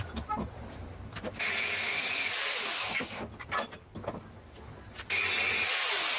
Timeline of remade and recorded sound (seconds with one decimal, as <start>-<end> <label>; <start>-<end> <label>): 0.0-3.9 remade; 3.9-5.5 recorded; 5.5-6.2 remade